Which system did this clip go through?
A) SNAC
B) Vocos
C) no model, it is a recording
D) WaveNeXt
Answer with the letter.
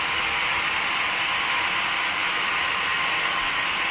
C